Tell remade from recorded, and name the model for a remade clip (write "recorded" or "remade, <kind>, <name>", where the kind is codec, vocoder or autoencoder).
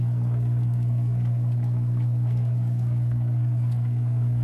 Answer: remade, codec, SNAC